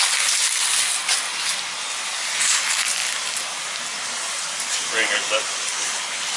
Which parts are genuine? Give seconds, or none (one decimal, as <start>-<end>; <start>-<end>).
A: 0.0-5.7